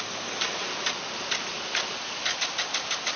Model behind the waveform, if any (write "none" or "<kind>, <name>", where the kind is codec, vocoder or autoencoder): none